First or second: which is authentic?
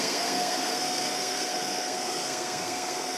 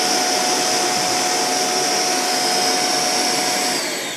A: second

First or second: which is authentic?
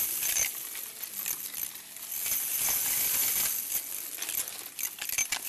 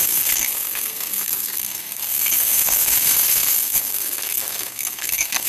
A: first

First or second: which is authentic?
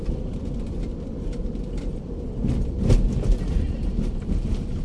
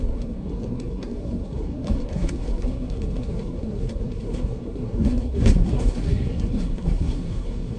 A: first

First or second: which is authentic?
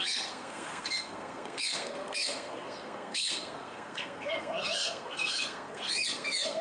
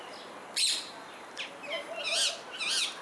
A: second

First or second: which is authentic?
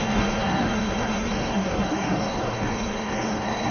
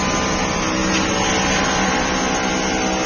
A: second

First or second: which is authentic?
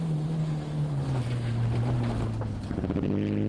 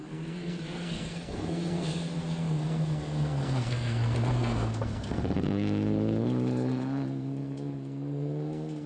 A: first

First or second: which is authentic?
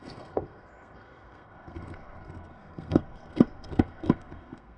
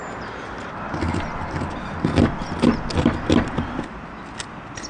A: second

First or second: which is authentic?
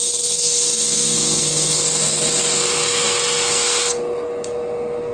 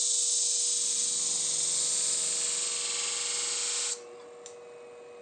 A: second